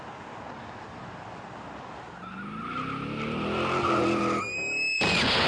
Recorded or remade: recorded